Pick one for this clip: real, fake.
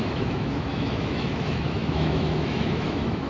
fake